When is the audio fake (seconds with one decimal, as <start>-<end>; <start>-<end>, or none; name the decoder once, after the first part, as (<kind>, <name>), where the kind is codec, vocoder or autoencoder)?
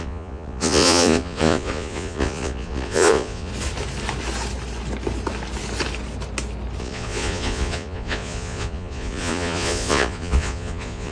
0.0-3.5 (vocoder, Vocos); 6.8-11.1